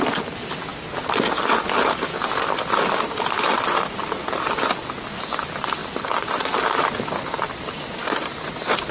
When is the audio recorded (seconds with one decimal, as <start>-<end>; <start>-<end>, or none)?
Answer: 0.0-8.0